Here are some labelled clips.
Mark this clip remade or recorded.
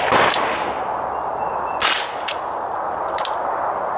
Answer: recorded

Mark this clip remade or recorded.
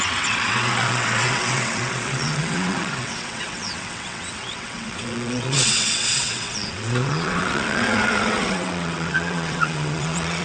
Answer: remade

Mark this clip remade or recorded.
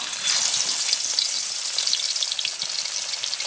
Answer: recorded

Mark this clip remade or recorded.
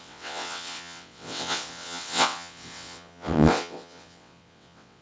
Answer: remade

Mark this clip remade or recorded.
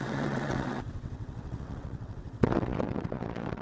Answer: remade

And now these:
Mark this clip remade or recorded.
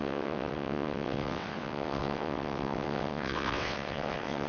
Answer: remade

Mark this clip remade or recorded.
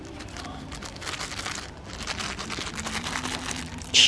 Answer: recorded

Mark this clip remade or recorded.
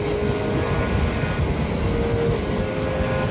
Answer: recorded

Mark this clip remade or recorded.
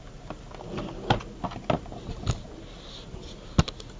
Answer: recorded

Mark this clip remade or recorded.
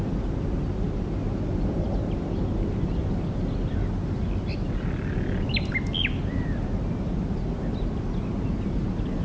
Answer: recorded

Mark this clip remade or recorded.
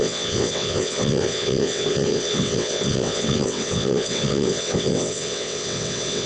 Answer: remade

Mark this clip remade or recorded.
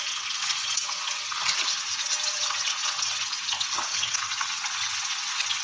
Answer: remade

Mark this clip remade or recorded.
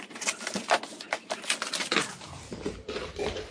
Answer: recorded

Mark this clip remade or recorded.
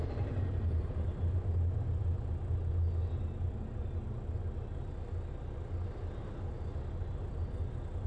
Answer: recorded